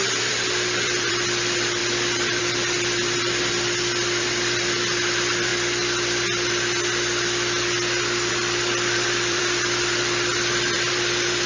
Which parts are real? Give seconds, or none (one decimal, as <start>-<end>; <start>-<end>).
1.8-2.4; 5.5-8.3